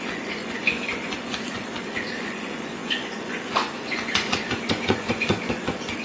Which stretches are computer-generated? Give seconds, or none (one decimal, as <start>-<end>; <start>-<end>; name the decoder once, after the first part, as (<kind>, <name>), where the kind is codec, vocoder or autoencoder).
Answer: 0.0-6.0 (vocoder, Vocos)